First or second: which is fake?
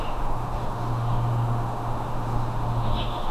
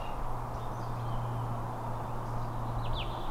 first